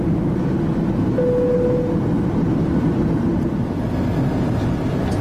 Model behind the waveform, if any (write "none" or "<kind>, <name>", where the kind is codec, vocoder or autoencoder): none